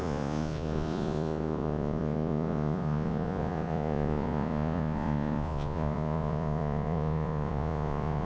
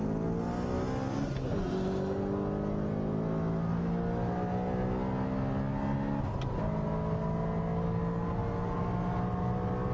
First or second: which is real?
second